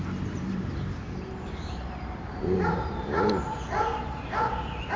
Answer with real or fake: fake